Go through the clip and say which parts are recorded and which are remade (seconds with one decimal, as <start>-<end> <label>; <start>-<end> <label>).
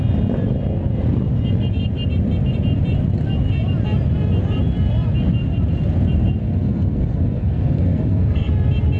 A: 0.0-6.4 recorded; 6.4-8.5 remade; 8.5-9.0 recorded